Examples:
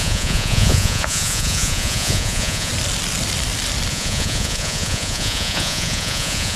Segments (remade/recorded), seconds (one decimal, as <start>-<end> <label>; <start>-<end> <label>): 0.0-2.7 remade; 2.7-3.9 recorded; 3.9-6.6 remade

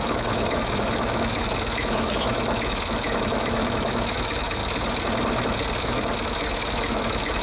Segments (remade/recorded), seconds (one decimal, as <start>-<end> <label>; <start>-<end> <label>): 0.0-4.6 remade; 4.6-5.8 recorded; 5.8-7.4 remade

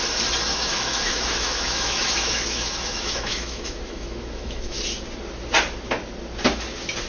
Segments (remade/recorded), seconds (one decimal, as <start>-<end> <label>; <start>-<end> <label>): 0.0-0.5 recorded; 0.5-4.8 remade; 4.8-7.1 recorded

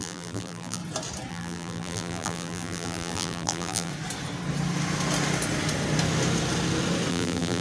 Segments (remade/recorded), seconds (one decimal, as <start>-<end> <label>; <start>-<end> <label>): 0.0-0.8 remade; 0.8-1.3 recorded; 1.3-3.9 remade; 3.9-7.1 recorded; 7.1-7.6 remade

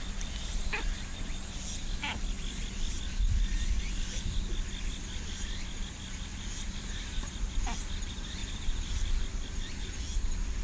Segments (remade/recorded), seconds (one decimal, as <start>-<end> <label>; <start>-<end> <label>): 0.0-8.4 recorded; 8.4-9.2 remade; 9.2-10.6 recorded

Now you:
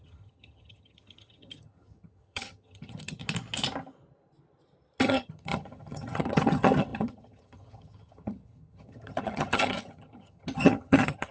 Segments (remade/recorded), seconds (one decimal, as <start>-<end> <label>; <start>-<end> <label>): 0.0-3.2 remade; 3.2-5.0 recorded; 5.0-11.3 remade